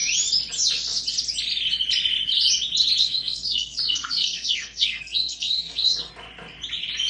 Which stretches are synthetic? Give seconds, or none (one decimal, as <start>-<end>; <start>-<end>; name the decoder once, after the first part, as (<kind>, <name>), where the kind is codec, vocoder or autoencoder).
3.0-6.1 (codec, SNAC)